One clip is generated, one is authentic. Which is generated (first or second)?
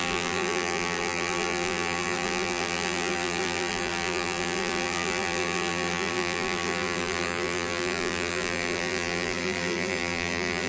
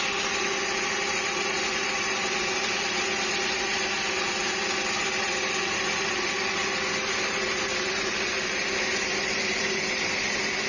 first